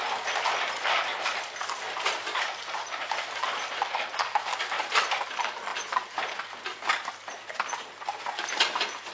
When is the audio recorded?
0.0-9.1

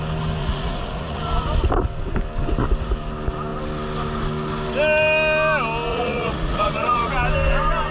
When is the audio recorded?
0.0-0.4; 1.2-5.9; 7.1-7.9

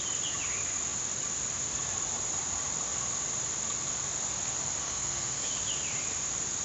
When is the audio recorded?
0.0-4.8; 5.5-6.6

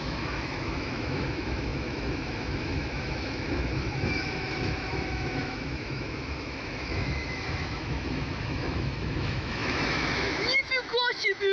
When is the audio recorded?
none